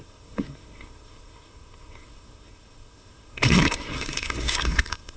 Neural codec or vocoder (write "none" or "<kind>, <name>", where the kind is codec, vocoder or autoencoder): codec, SNAC